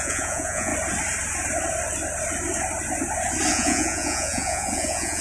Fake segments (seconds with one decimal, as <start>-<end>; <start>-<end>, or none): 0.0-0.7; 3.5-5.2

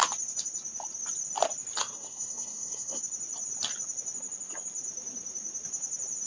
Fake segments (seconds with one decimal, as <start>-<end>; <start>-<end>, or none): 1.8-3.0

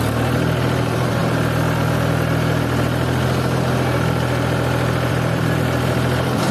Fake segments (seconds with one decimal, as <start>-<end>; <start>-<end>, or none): 0.0-1.2; 5.1-6.5

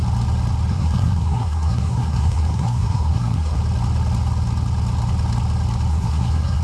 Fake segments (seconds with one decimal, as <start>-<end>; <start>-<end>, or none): 0.7-3.6; 5.9-6.6